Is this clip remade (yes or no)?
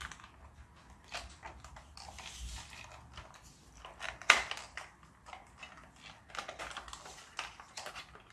no